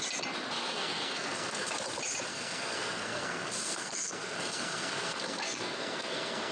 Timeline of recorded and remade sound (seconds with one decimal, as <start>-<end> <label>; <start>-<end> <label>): 0.0-0.6 recorded; 0.6-1.7 remade; 1.7-2.3 recorded; 2.3-6.5 remade